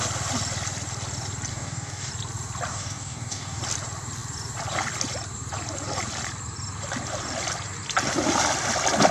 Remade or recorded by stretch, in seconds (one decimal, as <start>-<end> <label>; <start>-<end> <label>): 0.0-1.5 recorded; 1.5-2.1 remade; 2.1-2.7 recorded; 2.7-3.6 remade; 3.6-9.1 recorded